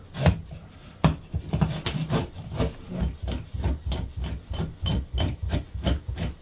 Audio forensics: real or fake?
real